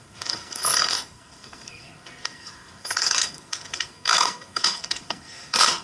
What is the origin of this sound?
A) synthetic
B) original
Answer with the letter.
A